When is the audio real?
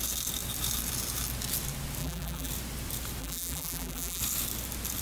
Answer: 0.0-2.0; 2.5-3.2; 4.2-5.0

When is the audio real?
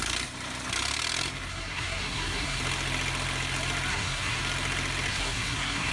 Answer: 0.0-1.5; 2.6-3.9; 4.4-5.1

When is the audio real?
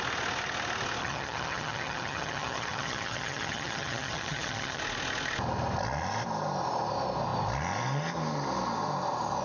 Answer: 0.0-1.0; 4.8-9.4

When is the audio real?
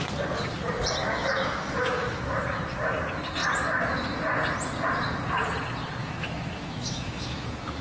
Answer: 0.0-1.0; 2.2-6.0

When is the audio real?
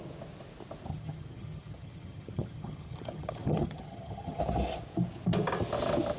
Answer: 0.0-0.9; 4.4-6.2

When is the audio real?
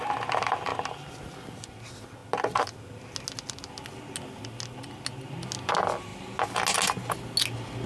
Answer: 0.0-7.9